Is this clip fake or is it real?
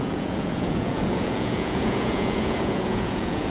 fake